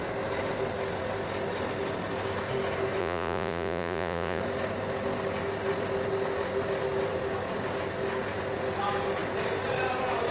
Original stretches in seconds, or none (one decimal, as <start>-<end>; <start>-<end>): 0.0-3.0; 4.4-10.3